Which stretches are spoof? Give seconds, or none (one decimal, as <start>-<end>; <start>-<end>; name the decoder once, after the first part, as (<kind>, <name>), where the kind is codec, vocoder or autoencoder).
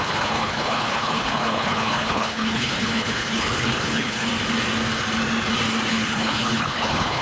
0.0-4.3 (codec, HILCodec); 5.9-7.2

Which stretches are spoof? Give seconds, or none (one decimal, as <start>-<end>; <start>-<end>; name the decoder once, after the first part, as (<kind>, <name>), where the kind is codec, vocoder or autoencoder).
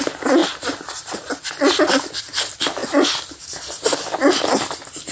none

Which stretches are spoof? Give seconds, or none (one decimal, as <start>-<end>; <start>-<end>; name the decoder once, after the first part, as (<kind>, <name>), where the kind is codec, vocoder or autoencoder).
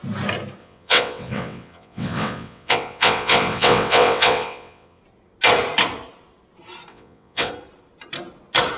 0.6-5.0 (vocoder, WaveNeXt); 6.9-7.5